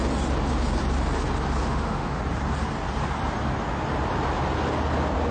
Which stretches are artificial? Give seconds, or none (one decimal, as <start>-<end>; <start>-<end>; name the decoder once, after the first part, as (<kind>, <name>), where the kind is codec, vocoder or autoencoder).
1.6-2.2 (autoencoder, DAC-VAE)